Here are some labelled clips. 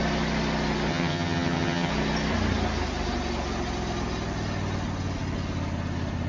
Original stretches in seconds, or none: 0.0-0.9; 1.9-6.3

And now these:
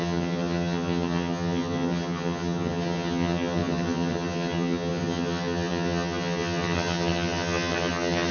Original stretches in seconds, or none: none

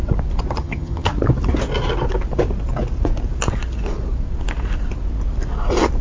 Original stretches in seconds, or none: 0.0-0.6; 1.1-6.0